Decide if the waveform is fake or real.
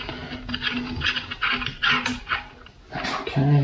real